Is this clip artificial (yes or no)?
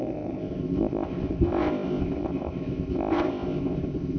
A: yes